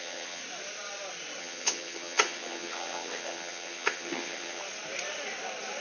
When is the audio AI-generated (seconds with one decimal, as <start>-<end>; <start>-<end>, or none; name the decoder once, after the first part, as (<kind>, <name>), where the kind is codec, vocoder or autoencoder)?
0.0-0.4 (vocoder, HiFi-GAN); 1.4-4.6

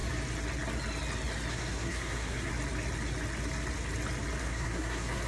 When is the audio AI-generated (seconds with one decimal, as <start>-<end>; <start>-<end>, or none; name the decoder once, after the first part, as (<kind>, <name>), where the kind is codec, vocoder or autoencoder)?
1.5-2.5 (codec, SNAC); 4.4-5.3

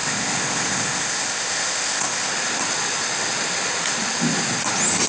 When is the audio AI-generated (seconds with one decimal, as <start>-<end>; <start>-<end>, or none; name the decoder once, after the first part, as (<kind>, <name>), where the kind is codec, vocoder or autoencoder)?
0.0-2.3 (codec, ZipCodec)

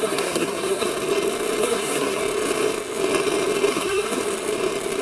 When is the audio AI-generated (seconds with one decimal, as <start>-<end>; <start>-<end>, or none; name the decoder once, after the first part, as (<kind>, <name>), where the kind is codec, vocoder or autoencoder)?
0.0-0.9 (codec, SNAC); 1.6-2.2; 3.7-4.2

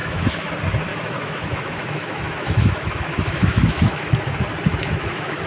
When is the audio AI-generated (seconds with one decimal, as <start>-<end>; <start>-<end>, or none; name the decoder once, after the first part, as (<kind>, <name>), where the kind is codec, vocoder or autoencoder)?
0.0-0.5 (autoencoder, DAC-VAE); 0.9-4.2; 4.7-5.5

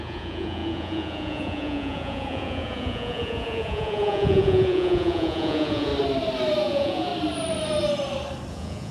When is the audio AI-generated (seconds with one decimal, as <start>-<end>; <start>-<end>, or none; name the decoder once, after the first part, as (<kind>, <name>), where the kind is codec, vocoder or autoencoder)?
0.0-5.9 (vocoder, Vocos); 6.6-7.1; 8.5-8.9